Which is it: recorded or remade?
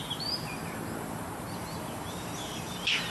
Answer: remade